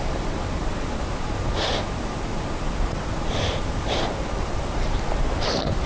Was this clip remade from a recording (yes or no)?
yes